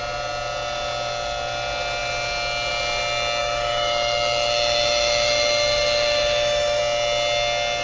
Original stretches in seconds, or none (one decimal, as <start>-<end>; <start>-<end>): 0.0-3.4; 6.8-7.8

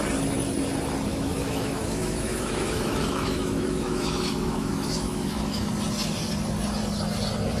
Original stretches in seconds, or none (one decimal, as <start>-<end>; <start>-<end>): 0.0-1.1; 5.7-7.6